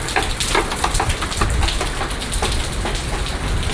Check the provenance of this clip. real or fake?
real